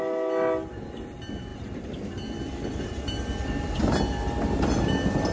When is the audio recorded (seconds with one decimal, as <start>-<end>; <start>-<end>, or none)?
0.0-5.3